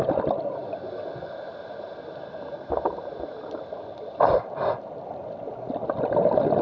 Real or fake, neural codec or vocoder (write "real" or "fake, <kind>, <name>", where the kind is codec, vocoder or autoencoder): real